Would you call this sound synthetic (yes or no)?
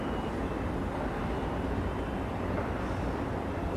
no